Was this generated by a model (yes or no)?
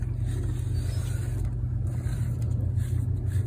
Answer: no